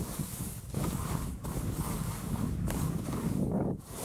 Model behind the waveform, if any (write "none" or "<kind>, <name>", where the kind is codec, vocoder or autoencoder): codec, DAC